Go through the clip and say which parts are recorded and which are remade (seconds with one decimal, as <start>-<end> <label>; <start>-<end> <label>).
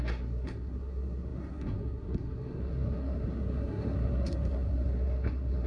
0.0-5.7 remade